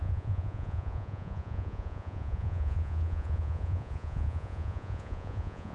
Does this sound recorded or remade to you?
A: remade